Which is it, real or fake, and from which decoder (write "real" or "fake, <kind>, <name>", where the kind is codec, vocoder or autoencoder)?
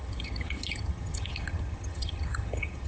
fake, vocoder, HiFi-GAN